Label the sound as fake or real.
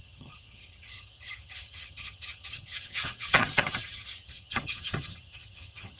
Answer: fake